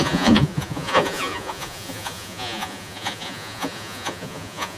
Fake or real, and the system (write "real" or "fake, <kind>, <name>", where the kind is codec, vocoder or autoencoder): fake, vocoder, Vocos